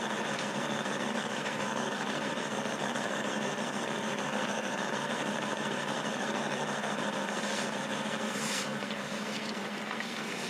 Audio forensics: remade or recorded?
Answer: remade